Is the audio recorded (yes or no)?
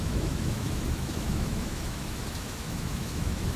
no